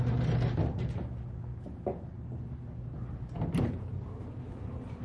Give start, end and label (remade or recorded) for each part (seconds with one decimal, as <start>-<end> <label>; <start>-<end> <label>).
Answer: 0.0-5.0 recorded